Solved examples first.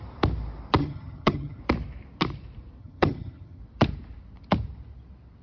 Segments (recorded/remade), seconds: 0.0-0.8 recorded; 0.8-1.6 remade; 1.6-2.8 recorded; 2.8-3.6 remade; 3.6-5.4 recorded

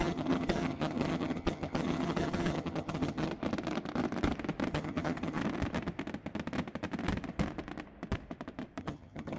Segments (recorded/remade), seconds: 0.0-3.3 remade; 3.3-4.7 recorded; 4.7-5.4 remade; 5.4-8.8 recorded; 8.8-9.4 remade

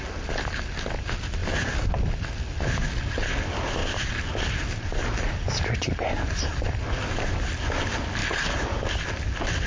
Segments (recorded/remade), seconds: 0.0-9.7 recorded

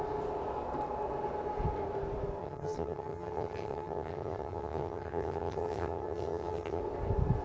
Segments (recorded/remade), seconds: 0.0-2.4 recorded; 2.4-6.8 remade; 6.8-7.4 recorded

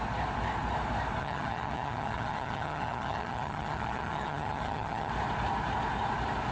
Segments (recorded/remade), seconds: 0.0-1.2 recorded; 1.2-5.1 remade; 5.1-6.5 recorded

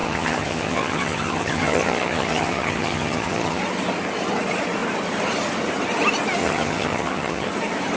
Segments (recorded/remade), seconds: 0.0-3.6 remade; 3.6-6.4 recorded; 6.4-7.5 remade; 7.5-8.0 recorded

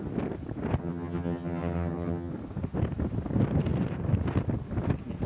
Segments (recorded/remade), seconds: 0.0-0.8 recorded; 0.8-2.3 remade; 2.3-5.3 recorded

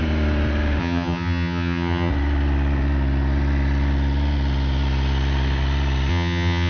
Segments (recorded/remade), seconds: 0.0-0.8 recorded; 0.8-2.1 remade; 2.1-6.1 recorded; 6.1-6.7 remade